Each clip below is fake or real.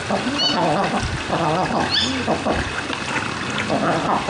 real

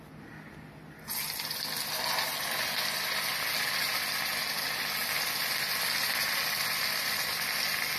real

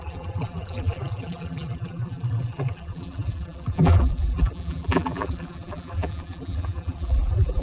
fake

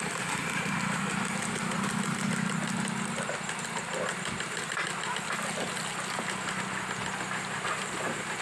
real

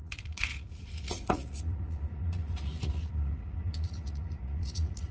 fake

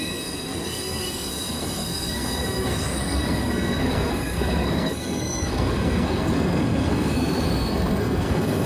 fake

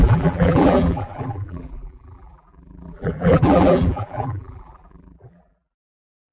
fake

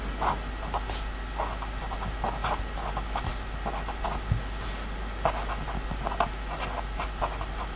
real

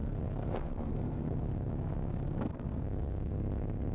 fake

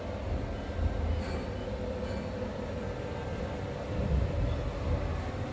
real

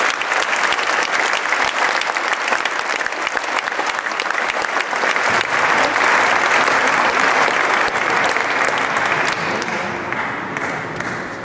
real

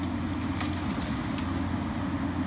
real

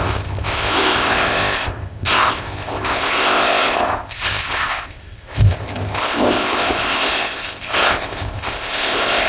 fake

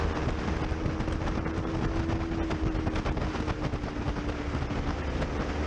real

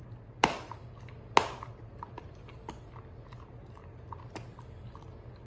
real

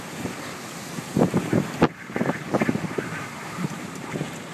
real